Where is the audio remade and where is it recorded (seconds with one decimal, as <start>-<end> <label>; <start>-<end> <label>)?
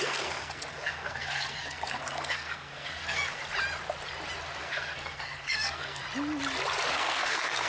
0.0-3.4 remade; 3.4-4.6 recorded; 4.6-6.0 remade; 6.0-6.9 recorded; 6.9-7.7 remade